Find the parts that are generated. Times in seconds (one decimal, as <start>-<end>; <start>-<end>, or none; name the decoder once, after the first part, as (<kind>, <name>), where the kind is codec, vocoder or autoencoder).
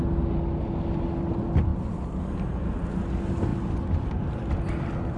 none